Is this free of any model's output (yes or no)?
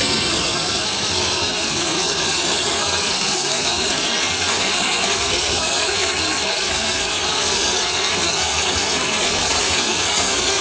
no